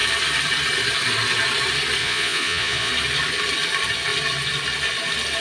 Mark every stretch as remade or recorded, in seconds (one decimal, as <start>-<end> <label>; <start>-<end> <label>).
0.0-2.0 recorded; 2.0-2.9 remade; 2.9-5.4 recorded